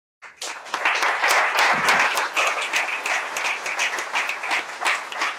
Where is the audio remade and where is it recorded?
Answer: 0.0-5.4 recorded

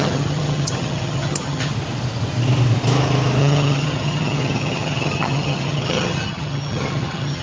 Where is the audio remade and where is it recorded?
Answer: 0.0-1.7 remade; 1.7-3.4 recorded; 3.4-7.4 remade

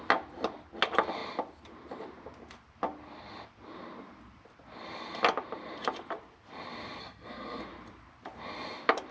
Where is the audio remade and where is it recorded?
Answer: 0.0-7.0 recorded; 7.0-7.6 remade; 7.6-9.1 recorded

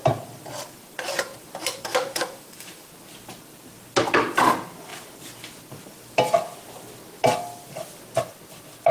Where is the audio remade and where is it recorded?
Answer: 0.0-1.9 recorded; 1.9-2.9 remade; 2.9-8.9 recorded

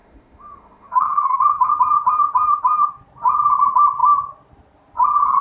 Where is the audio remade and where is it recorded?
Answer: 0.0-1.7 remade; 1.7-5.4 recorded

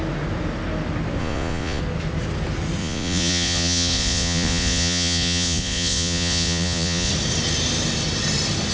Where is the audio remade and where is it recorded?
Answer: 0.0-1.2 recorded; 1.2-1.8 remade; 1.8-2.8 recorded; 2.8-7.1 remade; 7.1-8.7 recorded